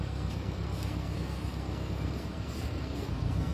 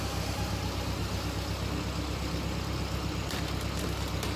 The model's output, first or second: first